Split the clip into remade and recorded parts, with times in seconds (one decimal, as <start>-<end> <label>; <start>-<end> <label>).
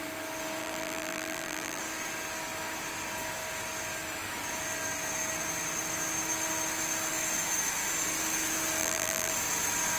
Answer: 0.0-0.6 recorded; 0.6-1.8 remade; 1.8-8.8 recorded; 8.8-9.3 remade; 9.3-10.0 recorded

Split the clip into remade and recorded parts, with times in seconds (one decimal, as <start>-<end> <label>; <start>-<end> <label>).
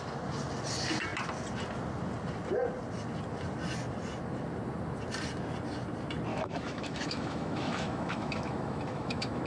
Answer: 0.0-6.3 recorded; 6.3-9.5 remade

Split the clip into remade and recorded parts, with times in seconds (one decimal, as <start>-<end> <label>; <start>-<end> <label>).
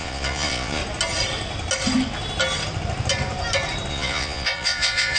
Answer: 0.0-0.8 remade; 0.8-3.9 recorded; 3.9-5.2 remade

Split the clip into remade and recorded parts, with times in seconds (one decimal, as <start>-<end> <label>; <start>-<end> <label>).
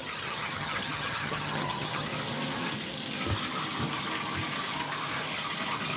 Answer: 0.0-2.1 remade; 2.1-6.0 recorded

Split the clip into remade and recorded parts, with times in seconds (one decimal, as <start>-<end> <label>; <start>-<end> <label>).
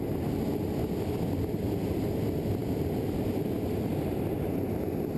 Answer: 0.0-5.2 recorded